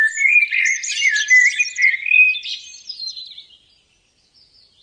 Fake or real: fake